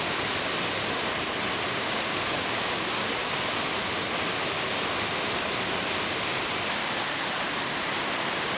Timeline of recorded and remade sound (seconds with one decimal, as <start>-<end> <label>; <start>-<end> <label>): 0.0-1.7 recorded; 1.7-3.4 remade; 3.4-8.6 recorded